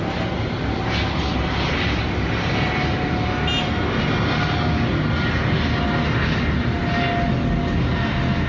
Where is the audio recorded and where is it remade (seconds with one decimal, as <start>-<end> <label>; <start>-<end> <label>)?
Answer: 0.0-8.5 recorded